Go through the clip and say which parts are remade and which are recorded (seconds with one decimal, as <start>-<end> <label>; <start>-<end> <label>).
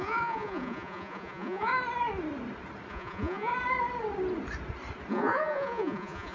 0.0-1.7 remade; 1.7-2.9 recorded; 2.9-3.5 remade; 3.5-5.1 recorded; 5.1-6.3 remade